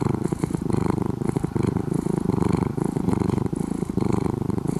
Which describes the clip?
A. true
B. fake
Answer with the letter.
B